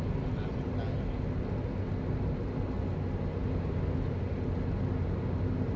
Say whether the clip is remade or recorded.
recorded